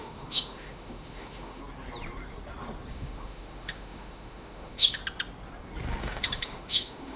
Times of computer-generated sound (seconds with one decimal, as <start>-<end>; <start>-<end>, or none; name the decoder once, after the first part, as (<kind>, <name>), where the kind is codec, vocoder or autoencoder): 0.0-1.6 (autoencoder, DAC-VAE); 2.9-5.0; 6.0-7.2